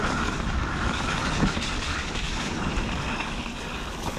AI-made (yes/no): yes